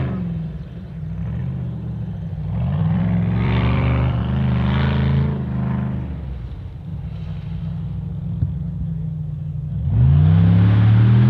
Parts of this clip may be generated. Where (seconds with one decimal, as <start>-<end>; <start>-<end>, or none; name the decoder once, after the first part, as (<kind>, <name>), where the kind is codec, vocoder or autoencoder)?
2.8-4.2 (vocoder, BigVGAN v2); 6.9-7.6